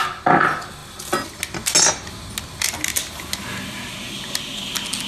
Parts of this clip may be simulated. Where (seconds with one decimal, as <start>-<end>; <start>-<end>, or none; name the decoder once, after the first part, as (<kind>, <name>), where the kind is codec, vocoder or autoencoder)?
none